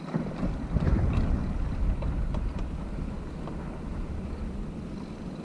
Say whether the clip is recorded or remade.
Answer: remade